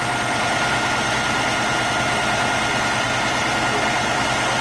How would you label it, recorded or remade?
recorded